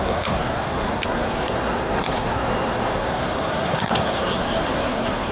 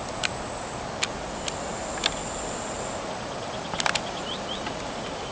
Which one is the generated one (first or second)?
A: first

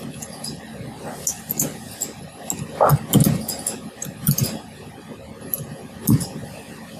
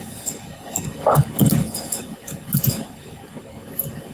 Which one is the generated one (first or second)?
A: second